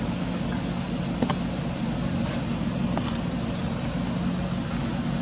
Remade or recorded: recorded